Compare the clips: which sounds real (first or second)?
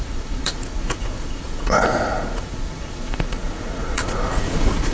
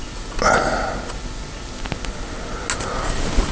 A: second